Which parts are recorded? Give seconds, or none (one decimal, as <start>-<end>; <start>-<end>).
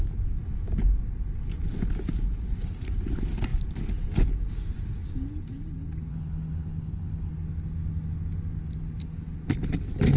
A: 0.0-6.1; 7.3-10.2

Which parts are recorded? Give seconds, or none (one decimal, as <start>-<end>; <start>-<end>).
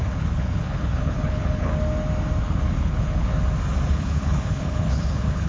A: 1.7-2.4; 3.3-3.9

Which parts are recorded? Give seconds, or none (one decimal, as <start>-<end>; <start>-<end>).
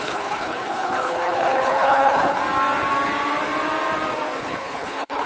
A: 2.4-4.4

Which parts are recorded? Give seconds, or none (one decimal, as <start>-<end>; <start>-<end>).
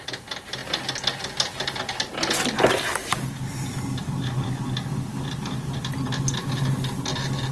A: 0.0-7.5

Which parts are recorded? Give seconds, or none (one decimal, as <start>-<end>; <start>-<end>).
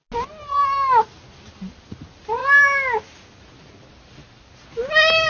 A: 0.0-5.3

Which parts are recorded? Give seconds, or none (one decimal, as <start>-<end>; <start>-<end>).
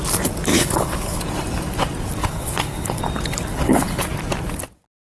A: 0.0-0.5; 1.2-2.2; 3.0-3.5; 4.0-5.1